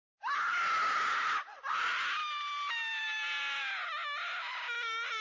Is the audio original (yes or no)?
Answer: yes